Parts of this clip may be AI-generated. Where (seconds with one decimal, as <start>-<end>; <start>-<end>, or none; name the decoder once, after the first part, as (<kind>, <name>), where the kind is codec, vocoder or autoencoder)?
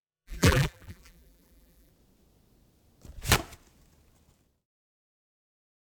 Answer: 0.0-1.9 (vocoder, BigVGAN v2); 5.5-6.0